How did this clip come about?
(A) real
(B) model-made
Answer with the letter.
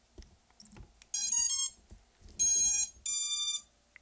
A